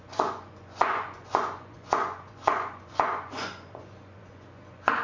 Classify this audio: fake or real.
fake